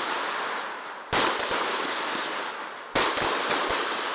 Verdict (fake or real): real